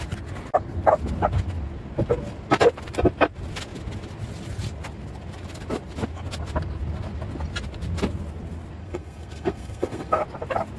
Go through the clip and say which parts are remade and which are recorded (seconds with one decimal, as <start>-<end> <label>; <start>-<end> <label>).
0.0-8.8 recorded; 8.8-10.2 remade; 10.2-10.8 recorded